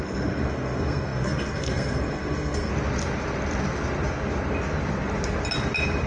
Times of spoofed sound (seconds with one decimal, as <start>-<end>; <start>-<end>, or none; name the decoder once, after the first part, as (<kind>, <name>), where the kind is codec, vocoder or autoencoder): 0.0-2.7 (codec, SNAC)

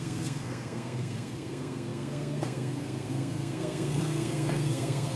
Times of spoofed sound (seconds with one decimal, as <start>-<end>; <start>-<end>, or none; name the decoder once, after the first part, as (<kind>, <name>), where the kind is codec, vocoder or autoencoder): 0.0-5.2 (codec, SNAC)

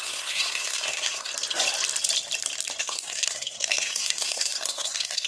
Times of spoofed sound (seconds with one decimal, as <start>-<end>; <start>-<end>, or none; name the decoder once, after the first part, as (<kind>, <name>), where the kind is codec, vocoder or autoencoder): 0.0-1.3 (codec, SNAC); 2.8-5.3

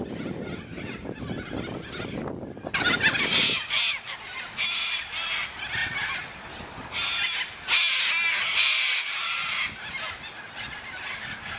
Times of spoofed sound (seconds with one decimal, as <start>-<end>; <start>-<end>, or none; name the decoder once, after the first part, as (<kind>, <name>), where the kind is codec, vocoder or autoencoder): none

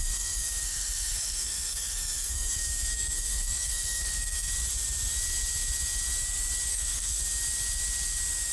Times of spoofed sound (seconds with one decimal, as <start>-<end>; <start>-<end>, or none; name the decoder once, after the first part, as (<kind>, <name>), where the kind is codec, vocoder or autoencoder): 0.0-4.5 (codec, SNAC); 6.7-7.2